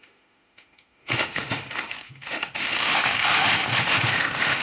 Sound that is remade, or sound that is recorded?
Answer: remade